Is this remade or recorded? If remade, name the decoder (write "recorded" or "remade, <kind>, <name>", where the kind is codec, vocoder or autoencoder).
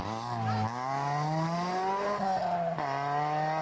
recorded